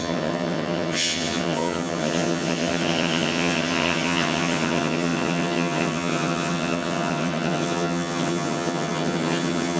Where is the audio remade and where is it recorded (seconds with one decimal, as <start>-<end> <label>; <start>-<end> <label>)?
0.0-9.8 remade